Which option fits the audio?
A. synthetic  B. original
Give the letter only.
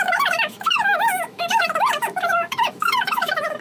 A